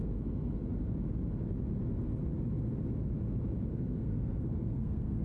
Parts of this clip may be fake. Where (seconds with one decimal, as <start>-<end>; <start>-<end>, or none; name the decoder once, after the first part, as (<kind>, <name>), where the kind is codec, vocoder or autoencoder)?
0.0-0.6 (codec, SNAC); 3.7-5.2